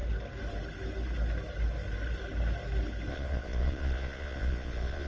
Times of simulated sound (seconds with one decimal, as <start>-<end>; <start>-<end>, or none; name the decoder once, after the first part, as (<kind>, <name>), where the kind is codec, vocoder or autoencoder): 3.1-5.1 (vocoder, Vocos)